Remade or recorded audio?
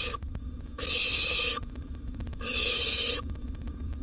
remade